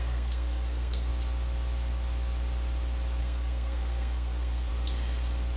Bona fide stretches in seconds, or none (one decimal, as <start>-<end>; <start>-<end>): 1.1-3.2; 4.7-5.6